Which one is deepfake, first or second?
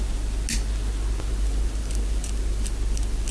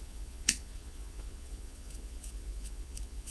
second